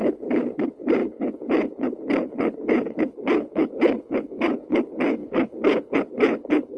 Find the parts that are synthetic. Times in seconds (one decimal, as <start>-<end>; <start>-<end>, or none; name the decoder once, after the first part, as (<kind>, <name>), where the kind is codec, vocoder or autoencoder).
0.0-6.8 (codec, HILCodec)